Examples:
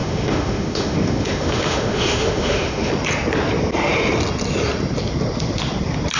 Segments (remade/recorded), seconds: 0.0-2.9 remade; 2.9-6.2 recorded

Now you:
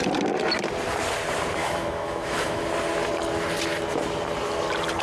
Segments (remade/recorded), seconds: 0.0-1.6 recorded; 1.6-2.6 remade; 2.6-5.0 recorded

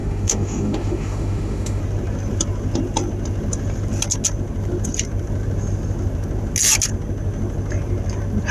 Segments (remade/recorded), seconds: 0.0-1.8 remade; 1.8-8.5 recorded

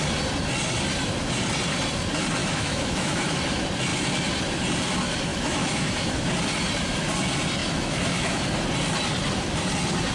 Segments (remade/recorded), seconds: 0.0-2.4 recorded; 2.4-3.4 remade; 3.4-5.3 recorded; 5.3-6.2 remade; 6.2-7.6 recorded; 7.6-8.4 remade; 8.4-10.1 recorded

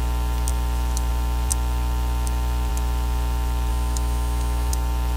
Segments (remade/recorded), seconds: 0.0-3.7 recorded; 3.7-4.7 remade; 4.7-5.2 recorded

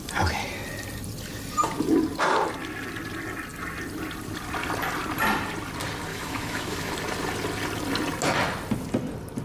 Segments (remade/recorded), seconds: 0.0-6.1 recorded; 6.1-6.9 remade; 6.9-9.4 recorded

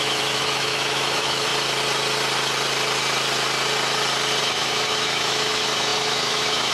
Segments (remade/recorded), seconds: 0.0-1.5 remade; 1.5-4.4 recorded; 4.4-6.7 remade